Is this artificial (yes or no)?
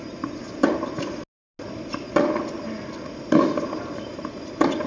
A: no